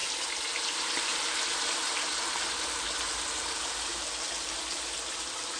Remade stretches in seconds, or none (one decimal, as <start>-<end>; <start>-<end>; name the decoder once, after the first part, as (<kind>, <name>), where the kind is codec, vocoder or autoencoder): none